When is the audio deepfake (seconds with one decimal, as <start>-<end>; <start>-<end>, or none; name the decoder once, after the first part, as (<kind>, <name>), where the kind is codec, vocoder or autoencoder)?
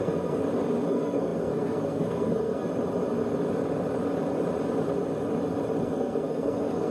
0.0-0.4 (codec, SNAC); 0.9-2.7; 5.8-6.9